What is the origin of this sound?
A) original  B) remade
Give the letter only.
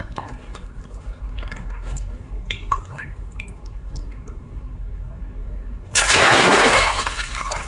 B